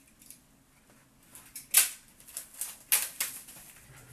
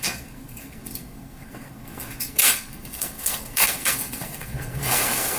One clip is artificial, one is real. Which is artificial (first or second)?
second